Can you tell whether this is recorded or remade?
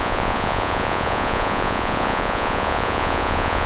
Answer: remade